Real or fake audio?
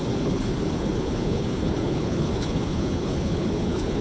fake